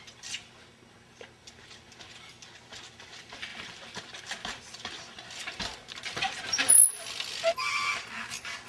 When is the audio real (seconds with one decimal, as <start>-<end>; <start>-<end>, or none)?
0.0-3.5; 6.4-8.7